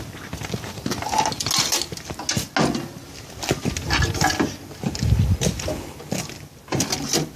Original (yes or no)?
yes